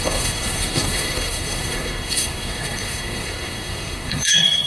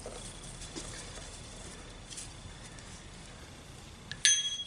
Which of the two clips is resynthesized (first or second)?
first